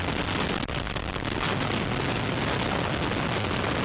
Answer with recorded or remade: recorded